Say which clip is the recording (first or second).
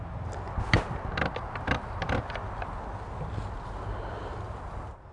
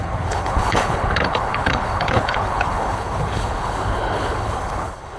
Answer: first